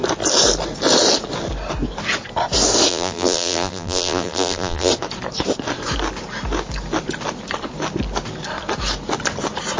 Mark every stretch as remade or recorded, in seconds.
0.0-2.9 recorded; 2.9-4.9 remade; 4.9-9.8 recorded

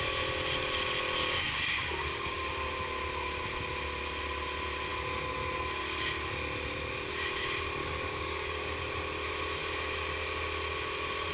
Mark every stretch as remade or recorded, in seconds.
0.0-1.2 recorded; 1.2-2.5 remade; 2.5-7.8 recorded; 7.8-8.8 remade; 8.8-11.3 recorded